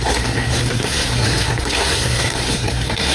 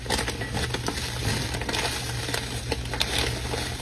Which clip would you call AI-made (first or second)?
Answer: first